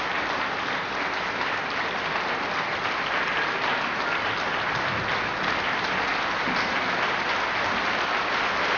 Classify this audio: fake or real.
real